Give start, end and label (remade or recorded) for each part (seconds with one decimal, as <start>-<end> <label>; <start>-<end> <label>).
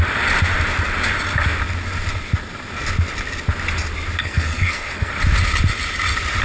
0.0-4.2 recorded; 4.2-5.1 remade; 5.1-6.4 recorded